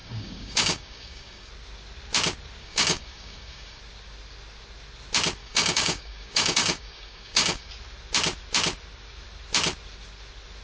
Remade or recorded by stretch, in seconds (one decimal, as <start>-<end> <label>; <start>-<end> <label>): 0.0-1.5 remade; 1.5-2.6 recorded; 2.6-3.8 remade; 3.8-5.4 recorded; 5.4-7.7 remade; 7.7-10.6 recorded